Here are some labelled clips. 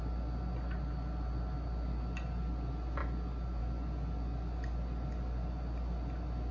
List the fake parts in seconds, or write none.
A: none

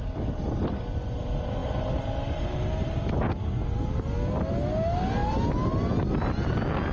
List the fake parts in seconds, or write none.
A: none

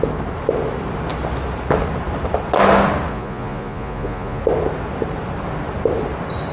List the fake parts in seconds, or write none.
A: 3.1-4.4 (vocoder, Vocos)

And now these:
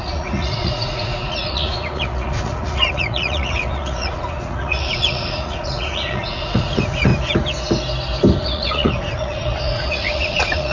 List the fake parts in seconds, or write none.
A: 0.0-7.1 (vocoder, Vocos); 8.4-10.7

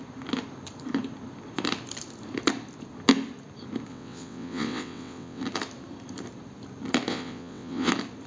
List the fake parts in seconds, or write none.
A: 3.9-5.4 (vocoder, WaveNeXt); 7.1-7.9